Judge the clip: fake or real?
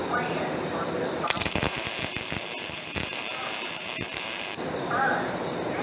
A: fake